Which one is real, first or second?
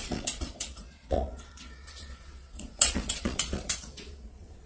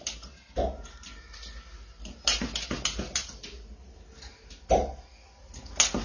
second